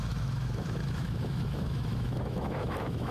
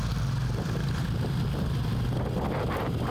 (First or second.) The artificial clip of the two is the first